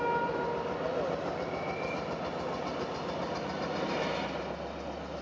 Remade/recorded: recorded